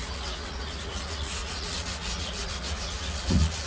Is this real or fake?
fake